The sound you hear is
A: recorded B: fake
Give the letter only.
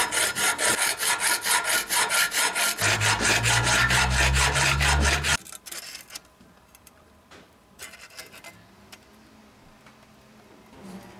A